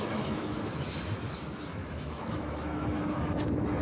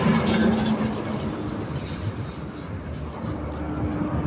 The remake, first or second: first